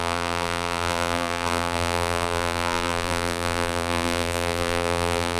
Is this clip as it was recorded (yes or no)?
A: no